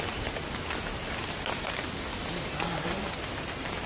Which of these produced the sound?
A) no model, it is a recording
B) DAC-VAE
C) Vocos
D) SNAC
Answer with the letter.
A